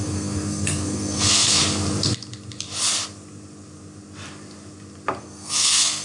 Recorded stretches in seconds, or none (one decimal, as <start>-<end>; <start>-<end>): 1.6-5.2